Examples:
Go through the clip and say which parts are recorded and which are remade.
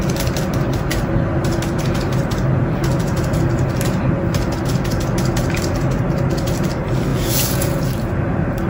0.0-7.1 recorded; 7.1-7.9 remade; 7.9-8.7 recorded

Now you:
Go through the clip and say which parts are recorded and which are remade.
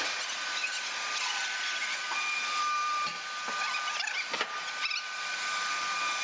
0.0-0.6 remade; 0.6-1.2 recorded; 1.2-3.4 remade; 3.4-5.6 recorded; 5.6-6.2 remade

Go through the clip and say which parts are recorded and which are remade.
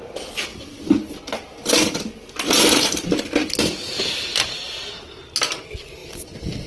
0.0-0.5 recorded; 0.5-1.2 remade; 1.2-6.0 recorded; 6.0-6.7 remade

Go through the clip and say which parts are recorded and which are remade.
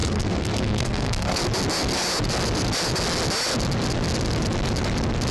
0.0-1.4 remade; 1.4-5.3 recorded